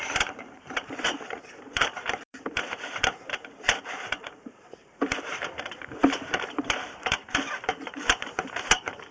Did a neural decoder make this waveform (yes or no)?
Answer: yes